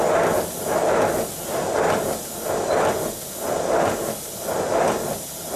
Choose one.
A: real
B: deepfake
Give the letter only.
A